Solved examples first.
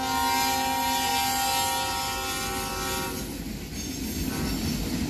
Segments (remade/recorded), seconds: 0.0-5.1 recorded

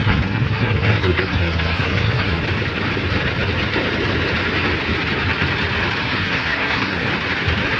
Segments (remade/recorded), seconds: 0.0-2.4 remade; 2.4-6.0 recorded; 6.0-7.1 remade; 7.1-7.8 recorded